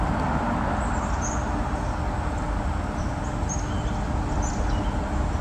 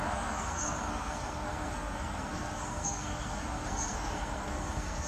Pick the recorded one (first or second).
first